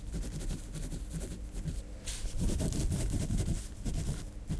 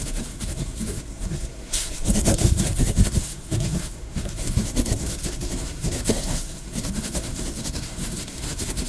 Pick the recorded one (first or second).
first